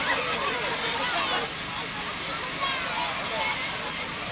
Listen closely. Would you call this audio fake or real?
real